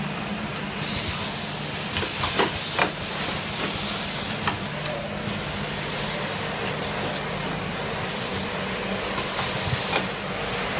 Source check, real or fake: real